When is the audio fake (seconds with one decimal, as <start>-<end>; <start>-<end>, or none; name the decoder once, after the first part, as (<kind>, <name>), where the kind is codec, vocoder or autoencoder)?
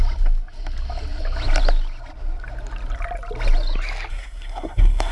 4.1-5.1 (codec, SNAC)